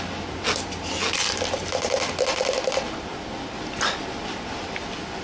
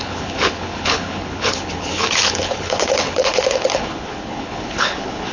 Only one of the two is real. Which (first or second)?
first